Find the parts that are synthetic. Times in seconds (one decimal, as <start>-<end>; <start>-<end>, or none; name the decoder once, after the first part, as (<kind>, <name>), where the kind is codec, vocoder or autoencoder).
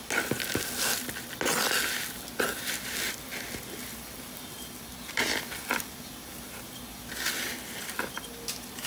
none